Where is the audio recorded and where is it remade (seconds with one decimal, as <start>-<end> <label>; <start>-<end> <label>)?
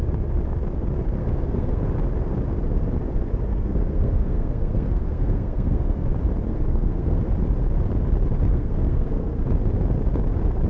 0.0-1.2 recorded; 1.2-1.8 remade; 1.8-3.5 recorded; 3.5-6.1 remade; 6.1-6.5 recorded; 6.5-7.2 remade; 7.2-8.5 recorded; 8.5-9.4 remade; 9.4-10.7 recorded